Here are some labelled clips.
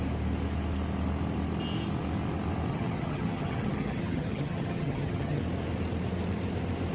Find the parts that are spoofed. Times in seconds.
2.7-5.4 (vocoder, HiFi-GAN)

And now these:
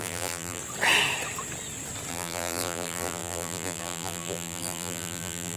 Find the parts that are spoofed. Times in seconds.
0.0-0.6 (vocoder, BigVGAN v2); 2.1-5.6

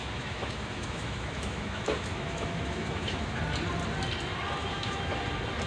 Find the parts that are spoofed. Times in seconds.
0.0-3.4 (autoencoder, DAC-VAE); 4.6-5.2

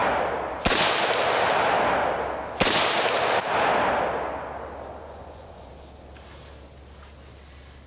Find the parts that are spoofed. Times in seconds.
5.0-5.7 (vocoder, Vocos)

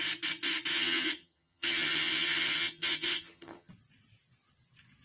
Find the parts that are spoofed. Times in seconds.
0.7-3.7 (vocoder, HiFi-GAN)

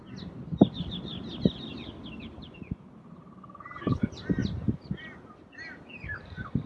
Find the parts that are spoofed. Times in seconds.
0.0-1.1 (vocoder, BigVGAN v2); 2.4-4.4; 5.7-6.7

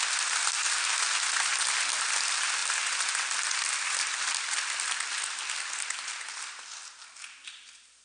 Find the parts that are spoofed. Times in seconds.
none

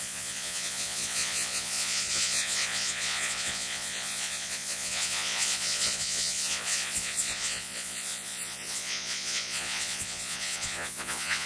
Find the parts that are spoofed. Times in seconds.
0.0-11.5 (vocoder, Vocos)